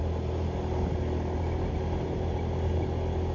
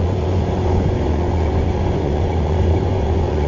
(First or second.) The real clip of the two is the first